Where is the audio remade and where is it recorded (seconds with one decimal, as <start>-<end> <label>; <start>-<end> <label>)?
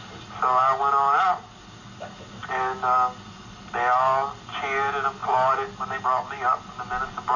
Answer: 0.0-7.4 recorded